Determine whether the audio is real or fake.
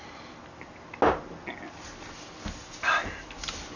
real